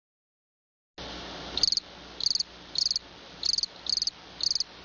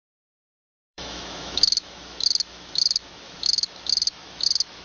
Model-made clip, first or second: second